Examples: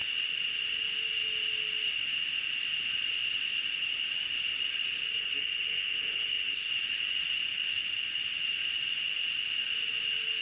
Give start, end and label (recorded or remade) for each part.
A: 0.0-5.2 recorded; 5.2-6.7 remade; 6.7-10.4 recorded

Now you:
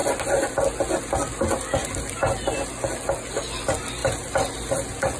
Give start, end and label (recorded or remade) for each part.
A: 0.0-5.2 recorded

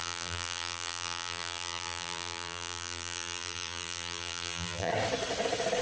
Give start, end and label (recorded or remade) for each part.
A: 0.0-4.9 remade; 4.9-5.8 recorded

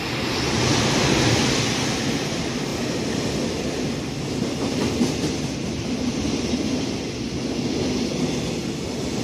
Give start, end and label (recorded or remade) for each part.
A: 0.0-9.2 recorded

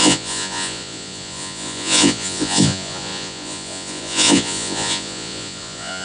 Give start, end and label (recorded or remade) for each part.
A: 0.0-6.0 remade

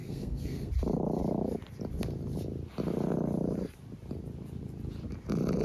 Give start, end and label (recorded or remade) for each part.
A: 0.0-0.7 remade; 0.7-5.6 recorded